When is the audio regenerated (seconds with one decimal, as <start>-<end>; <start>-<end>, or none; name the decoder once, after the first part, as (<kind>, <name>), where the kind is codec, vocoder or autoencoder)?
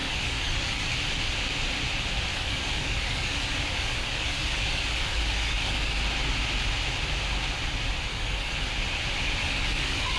0.0-0.9 (codec, DAC); 2.3-6.0; 8.1-8.7; 9.4-10.2